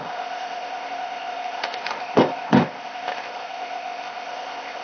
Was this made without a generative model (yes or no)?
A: no